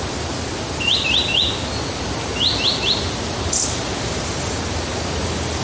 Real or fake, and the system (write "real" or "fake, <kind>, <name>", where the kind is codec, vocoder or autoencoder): real